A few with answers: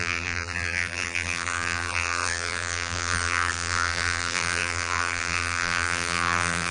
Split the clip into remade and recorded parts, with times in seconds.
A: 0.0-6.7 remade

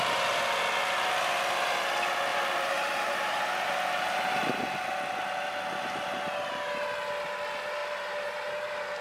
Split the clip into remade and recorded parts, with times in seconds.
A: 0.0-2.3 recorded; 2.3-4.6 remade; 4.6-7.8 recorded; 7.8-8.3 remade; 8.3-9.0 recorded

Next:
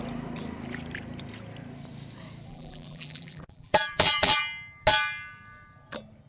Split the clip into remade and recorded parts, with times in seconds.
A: 0.0-2.5 recorded; 2.5-4.4 remade; 4.4-6.3 recorded